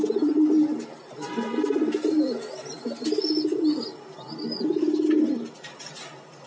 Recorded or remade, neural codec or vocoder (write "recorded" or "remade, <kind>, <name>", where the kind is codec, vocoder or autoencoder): recorded